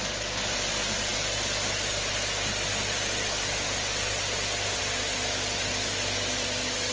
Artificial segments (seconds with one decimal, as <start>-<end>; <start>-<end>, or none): none